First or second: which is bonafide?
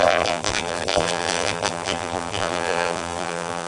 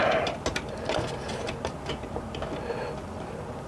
second